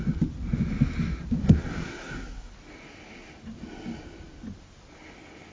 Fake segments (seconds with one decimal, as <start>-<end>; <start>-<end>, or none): 1.4-2.5